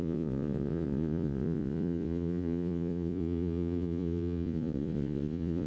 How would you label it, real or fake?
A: fake